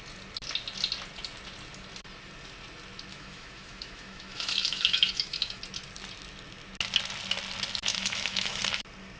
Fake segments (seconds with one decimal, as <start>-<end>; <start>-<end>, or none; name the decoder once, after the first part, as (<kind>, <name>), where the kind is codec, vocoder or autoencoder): 3.1-5.6 (autoencoder, DAC-VAE); 7.9-8.6